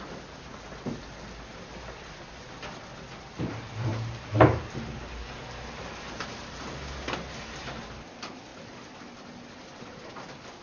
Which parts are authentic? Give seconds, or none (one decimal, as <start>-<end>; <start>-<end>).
0.0-3.9; 6.7-8.5; 9.0-10.6